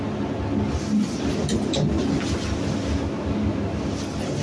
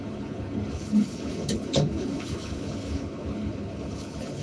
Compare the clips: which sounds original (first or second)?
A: first